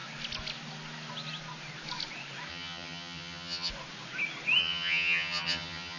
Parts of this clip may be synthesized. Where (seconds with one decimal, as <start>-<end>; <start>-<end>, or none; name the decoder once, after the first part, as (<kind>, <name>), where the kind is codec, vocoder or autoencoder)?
2.5-3.7 (vocoder, HiFi-GAN); 4.6-6.0